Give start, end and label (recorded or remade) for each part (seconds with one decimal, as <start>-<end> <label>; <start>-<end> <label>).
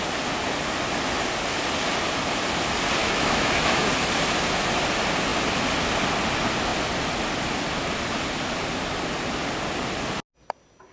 0.0-3.0 recorded; 3.0-3.7 remade; 3.7-10.9 recorded